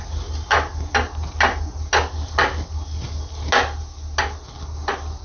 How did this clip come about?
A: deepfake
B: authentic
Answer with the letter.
B